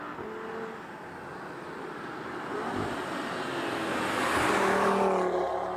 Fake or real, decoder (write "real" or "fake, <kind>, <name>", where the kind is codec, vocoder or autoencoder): real